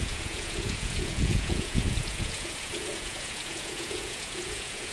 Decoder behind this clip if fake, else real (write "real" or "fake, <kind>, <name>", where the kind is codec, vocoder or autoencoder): fake, vocoder, Vocos